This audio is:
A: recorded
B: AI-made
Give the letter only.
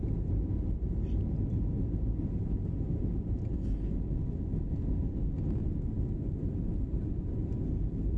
A